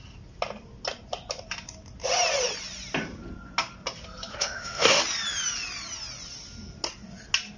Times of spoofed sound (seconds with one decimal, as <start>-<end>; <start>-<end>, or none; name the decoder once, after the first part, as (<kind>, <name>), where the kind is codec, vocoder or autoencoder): 4.3-5.0 (autoencoder, DAC-VAE)

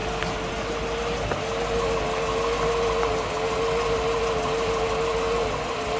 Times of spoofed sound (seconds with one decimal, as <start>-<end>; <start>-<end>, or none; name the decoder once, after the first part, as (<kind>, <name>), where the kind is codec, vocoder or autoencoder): none

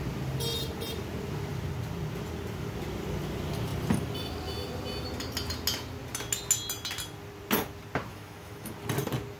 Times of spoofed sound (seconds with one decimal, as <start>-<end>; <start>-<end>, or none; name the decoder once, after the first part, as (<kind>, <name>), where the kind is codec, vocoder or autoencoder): 8.1-8.7 (autoencoder, DAC-VAE)

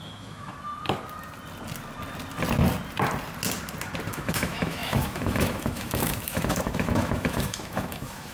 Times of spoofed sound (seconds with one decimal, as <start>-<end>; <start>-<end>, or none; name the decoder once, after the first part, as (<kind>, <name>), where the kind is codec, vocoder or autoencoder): 0.0-0.5 (autoencoder, DAC-VAE); 4.1-8.3

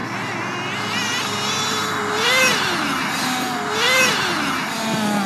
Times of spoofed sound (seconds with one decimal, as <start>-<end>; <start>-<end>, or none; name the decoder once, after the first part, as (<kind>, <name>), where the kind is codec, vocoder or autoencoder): none

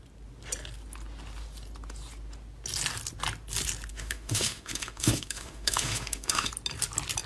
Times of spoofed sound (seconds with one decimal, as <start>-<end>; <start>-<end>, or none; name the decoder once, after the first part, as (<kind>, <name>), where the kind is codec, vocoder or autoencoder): 3.9-6.5 (autoencoder, DAC-VAE)

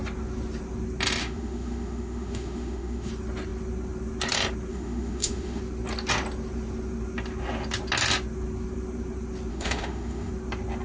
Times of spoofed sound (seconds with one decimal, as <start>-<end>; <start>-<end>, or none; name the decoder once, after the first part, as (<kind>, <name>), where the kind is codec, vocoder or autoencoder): 1.2-3.1 (autoencoder, DAC-VAE); 4.7-5.6; 9.5-10.3

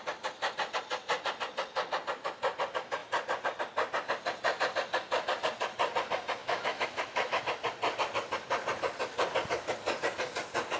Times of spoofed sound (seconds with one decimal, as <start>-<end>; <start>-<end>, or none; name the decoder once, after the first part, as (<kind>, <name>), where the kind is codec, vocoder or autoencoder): 6.4-7.4 (autoencoder, DAC-VAE)